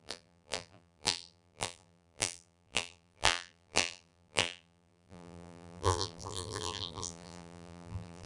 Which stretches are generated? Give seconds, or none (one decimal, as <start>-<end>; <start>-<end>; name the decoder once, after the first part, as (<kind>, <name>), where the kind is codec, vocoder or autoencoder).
0.0-8.3 (vocoder, BigVGAN v2)